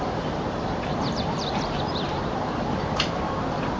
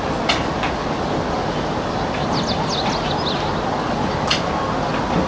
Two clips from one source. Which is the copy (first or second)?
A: first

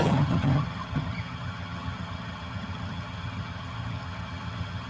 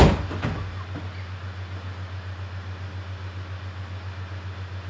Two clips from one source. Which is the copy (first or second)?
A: first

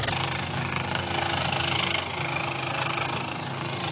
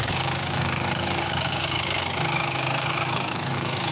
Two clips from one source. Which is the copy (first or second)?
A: second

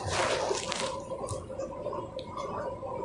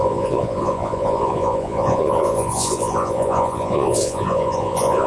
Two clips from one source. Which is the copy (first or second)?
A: second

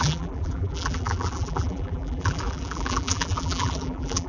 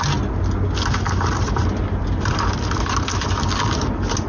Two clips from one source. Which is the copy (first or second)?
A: first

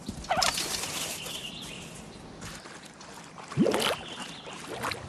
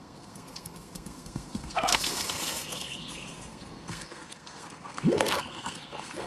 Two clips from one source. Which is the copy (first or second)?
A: second